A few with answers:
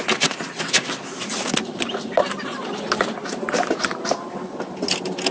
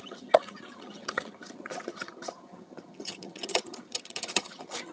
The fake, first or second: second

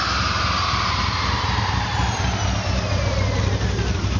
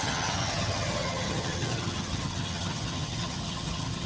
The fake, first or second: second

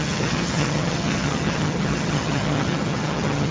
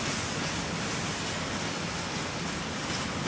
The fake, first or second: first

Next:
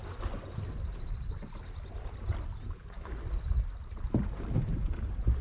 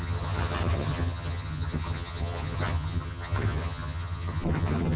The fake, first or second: second